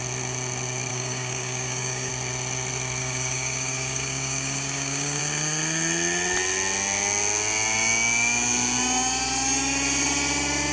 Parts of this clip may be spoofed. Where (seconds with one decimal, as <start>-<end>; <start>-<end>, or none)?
0.9-2.1; 3.0-5.2